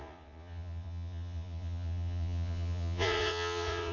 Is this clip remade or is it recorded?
remade